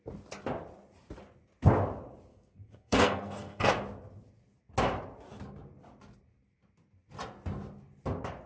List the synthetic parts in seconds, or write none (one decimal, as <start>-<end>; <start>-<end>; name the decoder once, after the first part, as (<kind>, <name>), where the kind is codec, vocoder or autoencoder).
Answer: 2.3-3.7 (codec, SNAC)

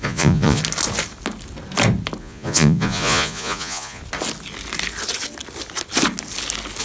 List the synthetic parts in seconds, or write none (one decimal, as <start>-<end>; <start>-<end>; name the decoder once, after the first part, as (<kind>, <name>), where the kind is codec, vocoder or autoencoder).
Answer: 0.0-0.6 (vocoder, Vocos); 2.2-4.0